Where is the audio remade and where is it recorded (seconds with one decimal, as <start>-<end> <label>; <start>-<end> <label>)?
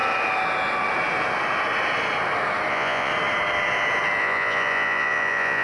0.0-2.7 recorded; 2.7-3.1 remade; 3.1-4.2 recorded; 4.2-5.6 remade